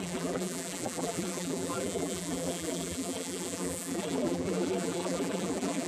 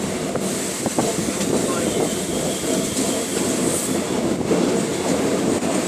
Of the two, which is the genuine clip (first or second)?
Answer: second